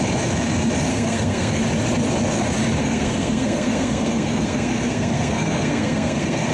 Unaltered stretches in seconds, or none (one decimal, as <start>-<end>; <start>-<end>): 0.0-0.9; 1.6-2.8